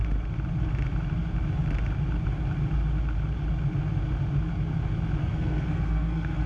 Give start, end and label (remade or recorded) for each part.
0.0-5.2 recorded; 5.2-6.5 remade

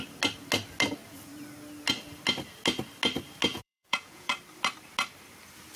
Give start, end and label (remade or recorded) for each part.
0.0-3.5 recorded; 3.5-4.3 remade; 4.3-5.8 recorded

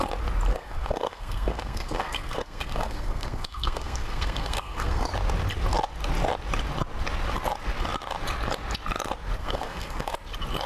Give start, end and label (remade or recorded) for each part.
0.0-0.5 recorded; 0.5-5.1 remade; 5.1-9.4 recorded; 9.4-10.1 remade; 10.1-10.7 recorded

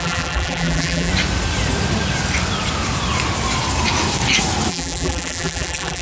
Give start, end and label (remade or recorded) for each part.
0.0-1.1 remade; 1.1-4.7 recorded; 4.7-6.0 remade

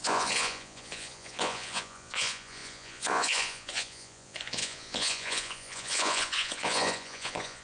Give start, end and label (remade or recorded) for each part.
0.0-7.6 remade

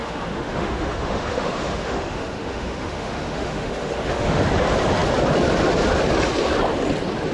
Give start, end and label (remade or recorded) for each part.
0.0-4.4 remade; 4.4-7.3 recorded

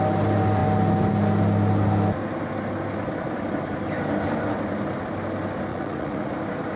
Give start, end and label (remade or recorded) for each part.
0.0-5.7 recorded; 5.7-6.3 remade; 6.3-6.8 recorded